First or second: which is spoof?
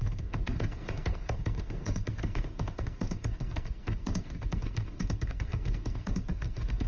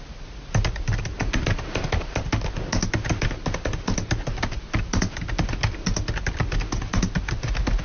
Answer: first